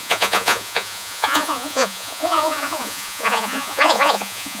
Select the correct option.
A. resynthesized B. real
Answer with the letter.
A